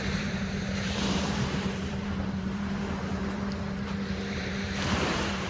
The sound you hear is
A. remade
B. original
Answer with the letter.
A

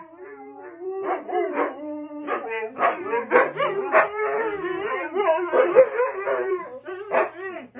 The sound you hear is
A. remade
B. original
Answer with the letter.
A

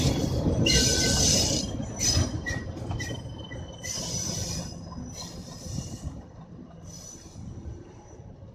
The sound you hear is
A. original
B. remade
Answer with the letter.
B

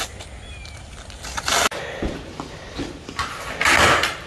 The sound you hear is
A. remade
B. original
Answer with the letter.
B